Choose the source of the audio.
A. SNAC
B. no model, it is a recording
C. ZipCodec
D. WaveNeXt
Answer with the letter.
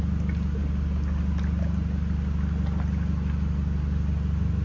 B